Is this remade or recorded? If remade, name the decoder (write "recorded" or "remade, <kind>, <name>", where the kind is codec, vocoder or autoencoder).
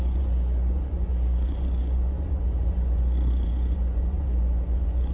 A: remade, vocoder, Vocos